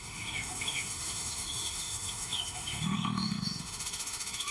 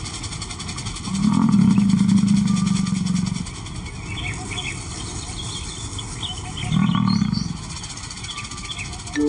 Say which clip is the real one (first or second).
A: second